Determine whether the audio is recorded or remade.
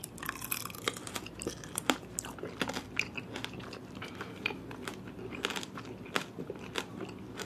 recorded